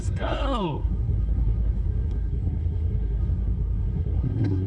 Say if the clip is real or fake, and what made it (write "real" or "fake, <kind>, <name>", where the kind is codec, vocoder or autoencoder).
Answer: fake, codec, SNAC